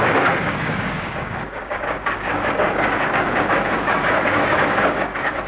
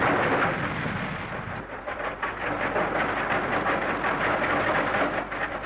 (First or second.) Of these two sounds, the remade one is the first